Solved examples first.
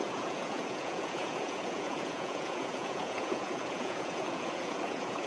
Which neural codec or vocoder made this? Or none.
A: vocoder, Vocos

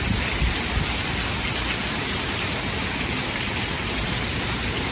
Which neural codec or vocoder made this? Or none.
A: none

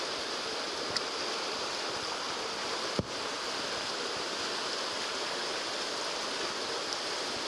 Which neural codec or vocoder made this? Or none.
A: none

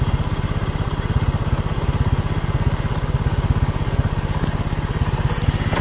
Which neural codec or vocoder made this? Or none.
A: none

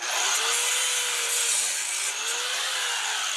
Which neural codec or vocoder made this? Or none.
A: none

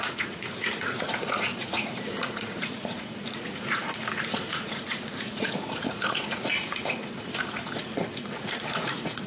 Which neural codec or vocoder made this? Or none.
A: vocoder, Vocos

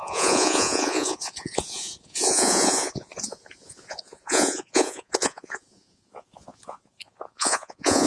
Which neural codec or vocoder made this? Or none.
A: vocoder, Vocos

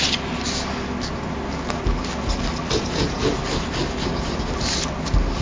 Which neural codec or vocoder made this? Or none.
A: none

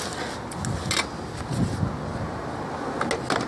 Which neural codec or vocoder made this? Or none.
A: none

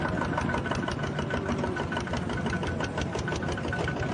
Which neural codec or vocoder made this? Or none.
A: none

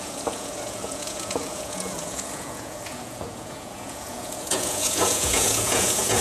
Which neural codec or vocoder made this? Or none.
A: vocoder, Vocos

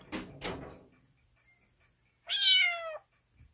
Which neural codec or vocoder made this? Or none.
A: none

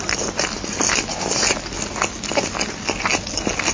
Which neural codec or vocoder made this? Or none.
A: none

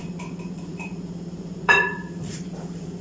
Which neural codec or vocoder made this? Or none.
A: vocoder, Vocos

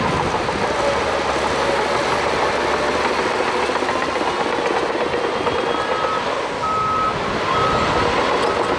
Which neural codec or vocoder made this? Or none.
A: none